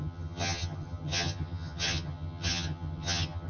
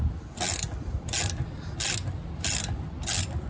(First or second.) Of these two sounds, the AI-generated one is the first